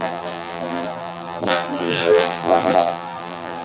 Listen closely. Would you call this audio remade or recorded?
remade